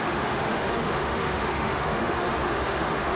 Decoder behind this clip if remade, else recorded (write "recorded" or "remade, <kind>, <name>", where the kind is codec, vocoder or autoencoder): remade, autoencoder, DAC-VAE